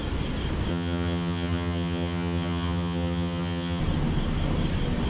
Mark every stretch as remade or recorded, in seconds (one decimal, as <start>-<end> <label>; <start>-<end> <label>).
0.0-0.7 recorded; 0.7-3.8 remade; 3.8-5.1 recorded